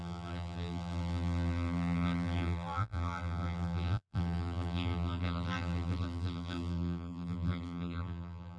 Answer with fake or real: fake